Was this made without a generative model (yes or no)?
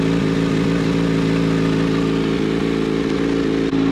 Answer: yes